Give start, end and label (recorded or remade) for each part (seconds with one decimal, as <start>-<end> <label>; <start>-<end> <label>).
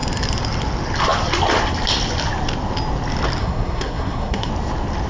0.0-3.4 recorded; 3.4-4.5 remade; 4.5-5.1 recorded